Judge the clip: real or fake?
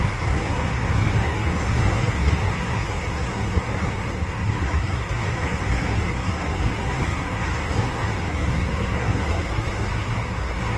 fake